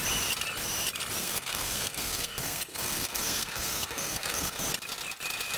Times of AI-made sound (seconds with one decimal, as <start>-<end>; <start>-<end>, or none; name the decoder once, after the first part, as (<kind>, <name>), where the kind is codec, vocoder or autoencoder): 1.2-4.6 (codec, SNAC)